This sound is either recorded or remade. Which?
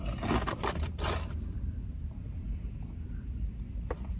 remade